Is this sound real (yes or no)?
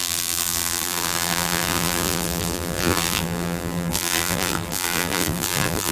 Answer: no